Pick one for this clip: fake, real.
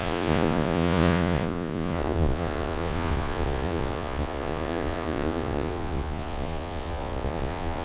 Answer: fake